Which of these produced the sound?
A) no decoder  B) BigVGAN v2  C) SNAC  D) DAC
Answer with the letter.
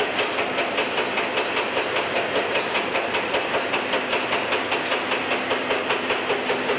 A